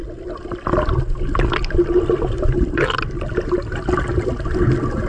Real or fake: real